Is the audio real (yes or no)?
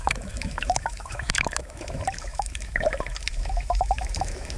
no